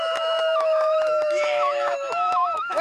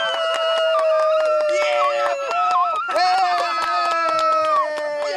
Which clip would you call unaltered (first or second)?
second